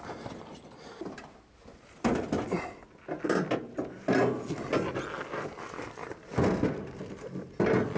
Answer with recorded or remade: recorded